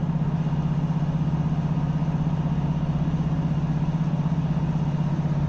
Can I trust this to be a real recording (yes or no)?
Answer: yes